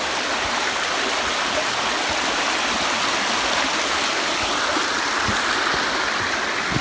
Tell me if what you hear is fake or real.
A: real